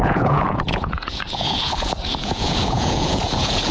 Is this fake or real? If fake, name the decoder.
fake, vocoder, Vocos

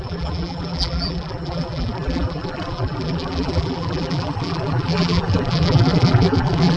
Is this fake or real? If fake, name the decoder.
fake, vocoder, BigVGAN v2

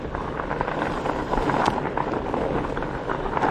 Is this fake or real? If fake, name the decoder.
real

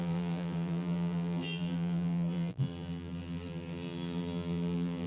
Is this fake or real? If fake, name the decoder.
fake, vocoder, BigVGAN v2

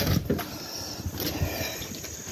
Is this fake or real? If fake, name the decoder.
real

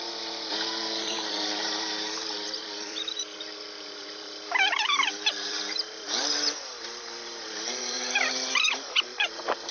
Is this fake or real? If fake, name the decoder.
fake, vocoder, BigVGAN v2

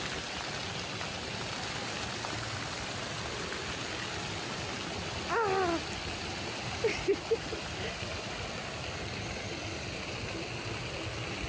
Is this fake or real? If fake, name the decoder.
real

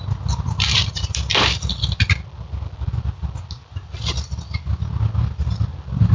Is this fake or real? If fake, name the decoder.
real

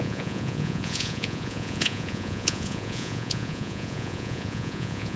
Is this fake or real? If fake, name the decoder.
fake, vocoder, Vocos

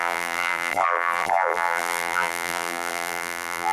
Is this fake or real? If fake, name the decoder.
fake, vocoder, BigVGAN v2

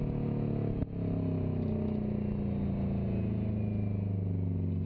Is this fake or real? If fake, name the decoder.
real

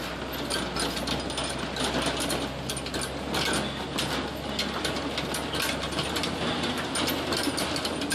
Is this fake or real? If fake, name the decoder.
real